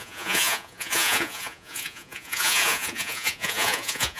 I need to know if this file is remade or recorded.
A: remade